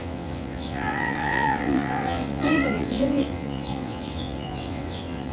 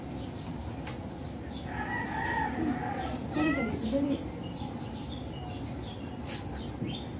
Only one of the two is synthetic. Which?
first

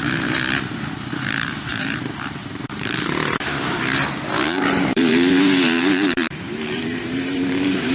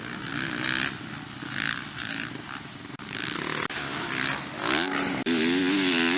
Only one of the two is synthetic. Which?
first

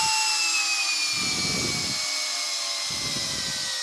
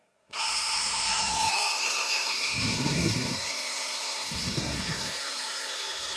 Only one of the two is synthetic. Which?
second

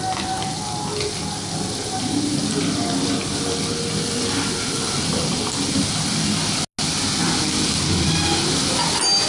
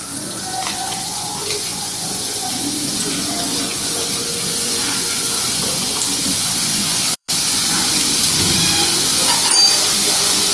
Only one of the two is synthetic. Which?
second